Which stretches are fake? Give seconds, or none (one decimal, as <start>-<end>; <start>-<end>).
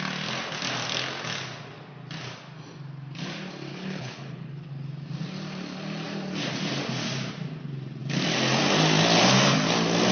3.7-4.7